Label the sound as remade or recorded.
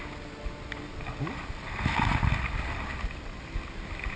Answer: recorded